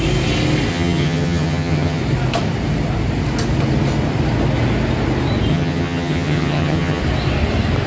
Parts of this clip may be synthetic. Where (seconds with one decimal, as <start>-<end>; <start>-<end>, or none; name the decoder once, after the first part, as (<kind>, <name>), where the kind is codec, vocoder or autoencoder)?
0.7-2.0 (vocoder, HiFi-GAN); 5.5-7.0